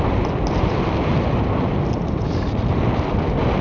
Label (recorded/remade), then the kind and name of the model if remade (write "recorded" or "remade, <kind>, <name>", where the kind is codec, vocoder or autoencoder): recorded